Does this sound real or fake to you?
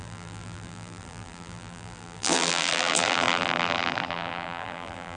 fake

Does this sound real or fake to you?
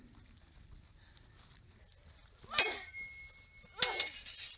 real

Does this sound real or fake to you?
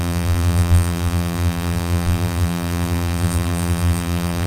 fake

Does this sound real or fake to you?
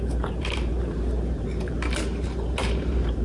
fake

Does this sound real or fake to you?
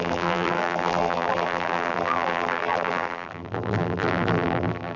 fake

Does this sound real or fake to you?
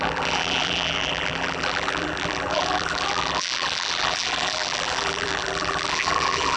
fake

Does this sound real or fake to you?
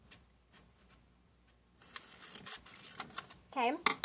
real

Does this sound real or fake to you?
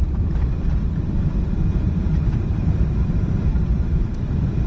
fake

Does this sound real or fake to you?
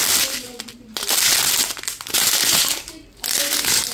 real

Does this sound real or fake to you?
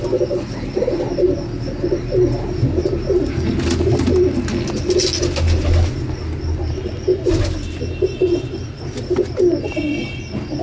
real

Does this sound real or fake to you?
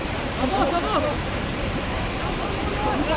fake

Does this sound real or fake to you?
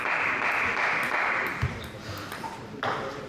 fake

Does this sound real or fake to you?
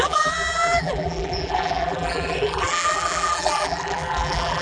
fake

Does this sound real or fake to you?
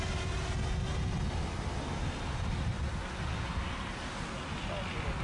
real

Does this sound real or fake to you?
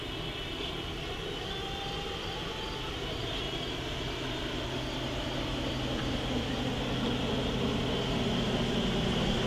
real